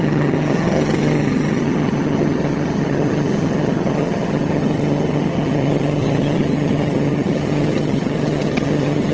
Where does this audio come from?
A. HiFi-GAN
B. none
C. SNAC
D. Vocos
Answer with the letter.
A